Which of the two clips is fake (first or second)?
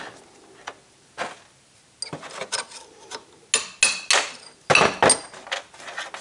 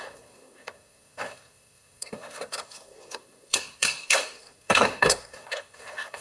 second